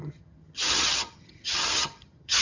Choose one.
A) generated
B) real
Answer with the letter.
A